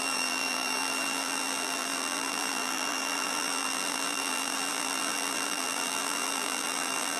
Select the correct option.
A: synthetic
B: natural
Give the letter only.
A